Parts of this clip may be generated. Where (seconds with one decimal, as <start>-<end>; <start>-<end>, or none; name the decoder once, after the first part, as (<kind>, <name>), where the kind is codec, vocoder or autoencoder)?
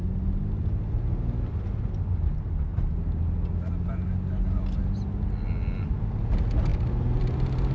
none